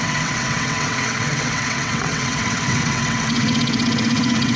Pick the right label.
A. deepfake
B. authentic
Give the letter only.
A